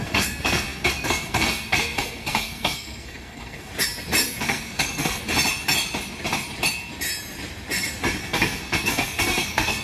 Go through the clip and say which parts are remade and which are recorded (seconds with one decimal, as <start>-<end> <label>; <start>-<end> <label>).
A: 0.0-3.7 remade; 3.7-4.4 recorded; 4.4-5.2 remade; 5.2-8.2 recorded; 8.2-9.8 remade